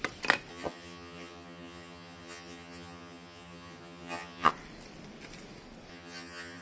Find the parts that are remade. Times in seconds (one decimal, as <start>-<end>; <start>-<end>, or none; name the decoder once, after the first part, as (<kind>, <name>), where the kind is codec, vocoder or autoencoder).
0.5-4.5 (vocoder, HiFi-GAN); 5.9-6.6